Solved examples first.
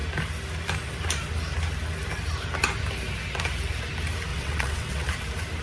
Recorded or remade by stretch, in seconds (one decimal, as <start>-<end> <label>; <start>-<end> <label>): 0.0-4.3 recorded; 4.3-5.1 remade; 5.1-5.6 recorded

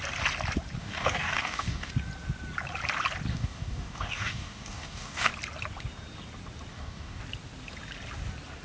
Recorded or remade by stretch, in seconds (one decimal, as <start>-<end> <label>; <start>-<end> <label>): 0.0-0.8 recorded; 0.8-1.9 remade; 1.9-3.3 recorded; 3.3-5.3 remade; 5.3-6.7 recorded; 6.7-7.2 remade; 7.2-8.6 recorded

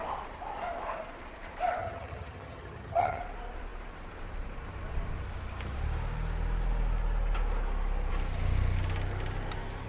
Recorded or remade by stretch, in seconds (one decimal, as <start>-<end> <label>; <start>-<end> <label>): 0.0-1.8 recorded; 1.8-3.2 remade; 3.2-9.9 recorded

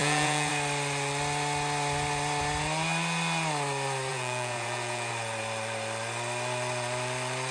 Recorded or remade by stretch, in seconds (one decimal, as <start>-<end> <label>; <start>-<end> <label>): 0.0-0.5 remade; 0.5-4.1 recorded; 4.1-5.1 remade; 5.1-7.5 recorded